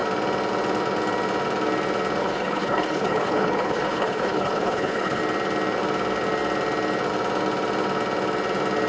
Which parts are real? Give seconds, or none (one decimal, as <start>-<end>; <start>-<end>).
0.0-2.2; 5.2-8.9